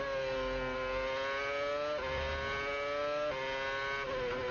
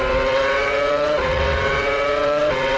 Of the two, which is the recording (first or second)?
first